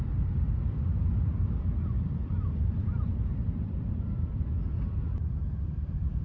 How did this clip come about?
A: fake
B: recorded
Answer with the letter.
A